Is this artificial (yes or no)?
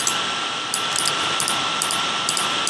yes